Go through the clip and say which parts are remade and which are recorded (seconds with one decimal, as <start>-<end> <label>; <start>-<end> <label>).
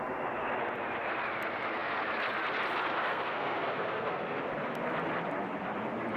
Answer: 0.0-3.1 recorded; 3.1-4.4 remade; 4.4-6.2 recorded